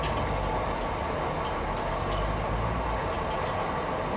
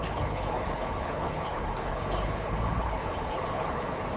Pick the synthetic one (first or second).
second